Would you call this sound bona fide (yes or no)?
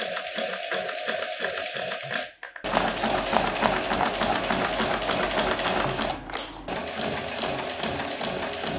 yes